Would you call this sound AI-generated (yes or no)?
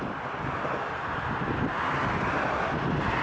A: no